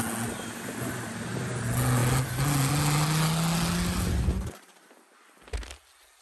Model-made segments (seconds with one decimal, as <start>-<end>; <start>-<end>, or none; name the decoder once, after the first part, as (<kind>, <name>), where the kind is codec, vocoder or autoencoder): none